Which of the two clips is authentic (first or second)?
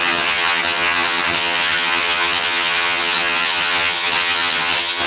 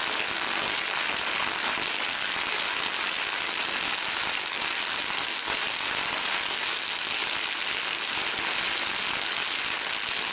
second